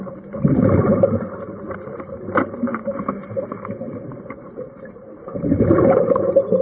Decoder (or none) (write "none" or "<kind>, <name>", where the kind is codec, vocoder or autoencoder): vocoder, BigVGAN v2